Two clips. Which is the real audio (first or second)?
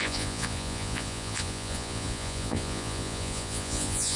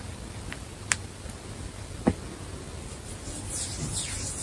second